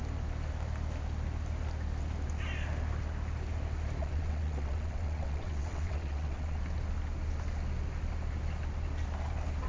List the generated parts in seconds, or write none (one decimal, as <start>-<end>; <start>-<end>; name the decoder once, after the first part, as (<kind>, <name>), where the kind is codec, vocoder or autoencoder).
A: 4.0-6.6 (vocoder, WaveNeXt)